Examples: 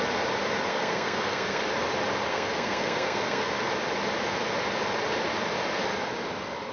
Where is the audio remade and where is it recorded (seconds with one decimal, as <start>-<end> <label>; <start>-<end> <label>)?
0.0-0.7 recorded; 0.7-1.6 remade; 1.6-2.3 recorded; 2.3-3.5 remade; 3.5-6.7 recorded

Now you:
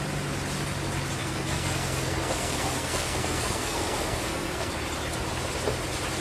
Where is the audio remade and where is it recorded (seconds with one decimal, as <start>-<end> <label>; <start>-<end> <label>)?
0.0-1.2 recorded; 1.2-4.7 remade; 4.7-6.2 recorded

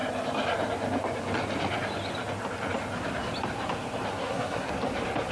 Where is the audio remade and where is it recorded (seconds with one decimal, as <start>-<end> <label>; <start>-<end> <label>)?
0.0-4.1 recorded; 4.1-4.7 remade; 4.7-5.3 recorded

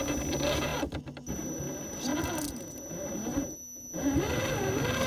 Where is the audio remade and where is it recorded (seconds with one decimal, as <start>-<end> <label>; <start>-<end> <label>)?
0.0-5.1 recorded